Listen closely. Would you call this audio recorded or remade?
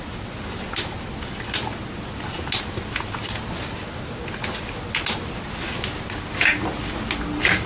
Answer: recorded